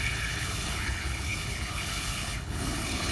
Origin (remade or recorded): remade